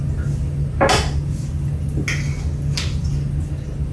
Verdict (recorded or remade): recorded